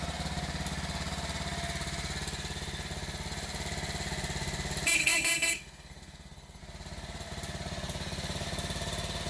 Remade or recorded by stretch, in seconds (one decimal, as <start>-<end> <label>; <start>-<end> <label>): 0.0-5.0 recorded; 5.0-6.6 remade; 6.6-9.3 recorded